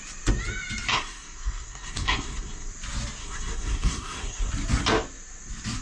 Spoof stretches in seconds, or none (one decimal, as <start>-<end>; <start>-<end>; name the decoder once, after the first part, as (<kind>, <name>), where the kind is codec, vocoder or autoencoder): 0.9-2.7 (codec, SNAC); 3.2-4.5